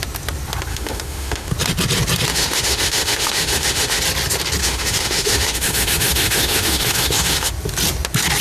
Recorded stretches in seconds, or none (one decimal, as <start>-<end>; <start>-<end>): 0.0-0.7; 1.5-2.3; 4.0-4.6; 7.5-8.4